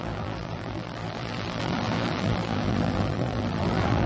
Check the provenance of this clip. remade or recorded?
remade